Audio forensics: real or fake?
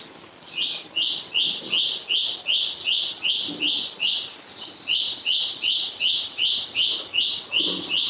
real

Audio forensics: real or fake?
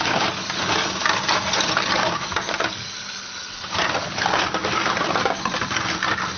real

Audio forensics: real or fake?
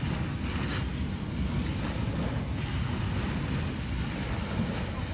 real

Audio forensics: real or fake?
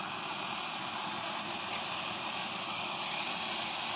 real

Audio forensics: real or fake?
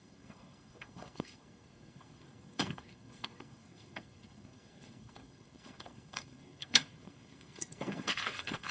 fake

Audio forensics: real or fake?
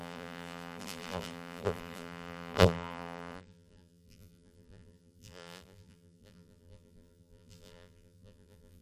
fake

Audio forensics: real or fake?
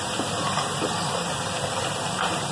real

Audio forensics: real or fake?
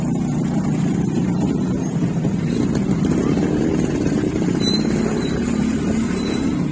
fake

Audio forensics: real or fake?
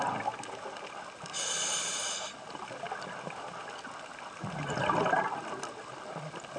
real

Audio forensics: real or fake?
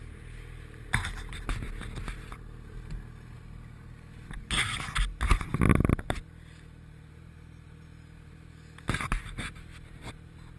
real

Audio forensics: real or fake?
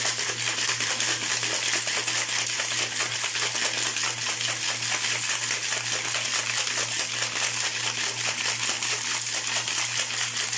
real